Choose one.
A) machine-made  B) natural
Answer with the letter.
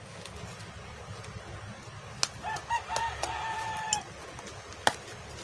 B